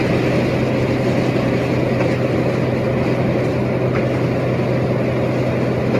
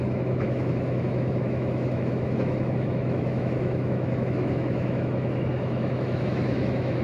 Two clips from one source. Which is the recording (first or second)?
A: first